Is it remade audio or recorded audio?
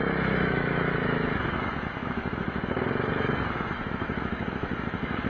remade